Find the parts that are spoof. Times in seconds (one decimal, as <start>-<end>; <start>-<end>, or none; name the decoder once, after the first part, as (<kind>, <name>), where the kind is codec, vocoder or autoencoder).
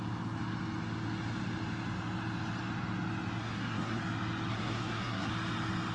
3.4-4.0 (codec, SNAC); 4.5-5.3